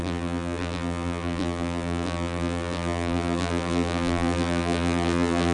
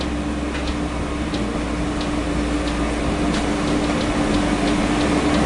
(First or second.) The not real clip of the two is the first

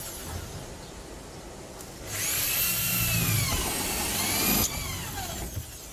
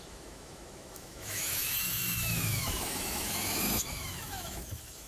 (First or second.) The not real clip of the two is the second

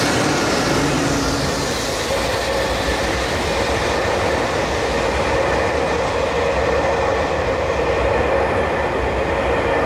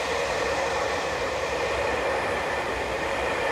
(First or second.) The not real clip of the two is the second